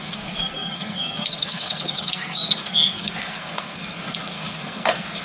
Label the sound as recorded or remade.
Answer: remade